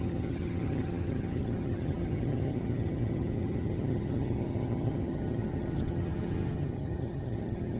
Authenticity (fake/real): fake